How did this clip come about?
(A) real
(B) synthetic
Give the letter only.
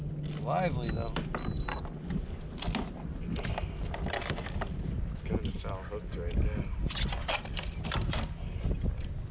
A